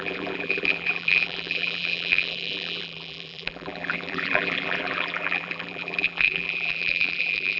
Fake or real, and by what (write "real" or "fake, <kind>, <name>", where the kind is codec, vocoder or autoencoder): fake, vocoder, BigVGAN v2